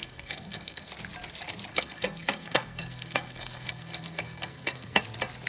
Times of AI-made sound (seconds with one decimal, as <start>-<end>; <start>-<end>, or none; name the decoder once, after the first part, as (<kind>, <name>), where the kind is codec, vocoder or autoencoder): 0.0-0.9 (codec, SNAC); 1.7-5.0